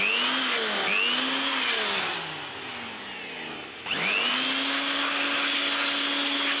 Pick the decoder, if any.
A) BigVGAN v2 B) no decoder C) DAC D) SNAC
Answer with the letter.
B